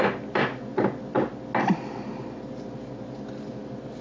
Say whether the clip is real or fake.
real